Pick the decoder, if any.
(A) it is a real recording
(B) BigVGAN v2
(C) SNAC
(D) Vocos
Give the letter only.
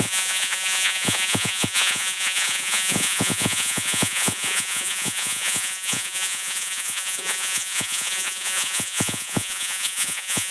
D